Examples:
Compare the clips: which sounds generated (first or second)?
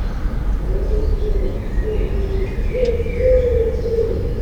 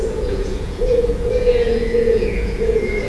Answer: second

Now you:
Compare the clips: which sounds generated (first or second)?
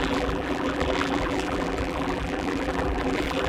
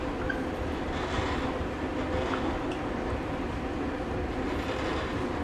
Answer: first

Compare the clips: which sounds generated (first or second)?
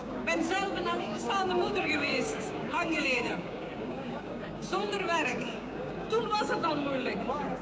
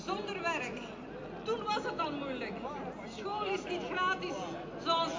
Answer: first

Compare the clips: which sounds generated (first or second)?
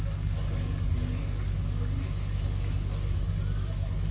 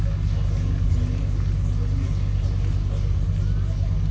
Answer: first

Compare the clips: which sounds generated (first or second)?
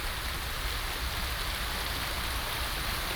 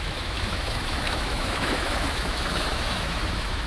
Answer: second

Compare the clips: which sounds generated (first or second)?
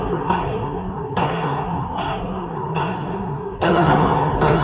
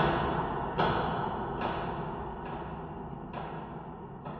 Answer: first